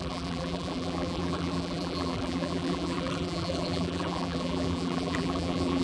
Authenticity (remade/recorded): remade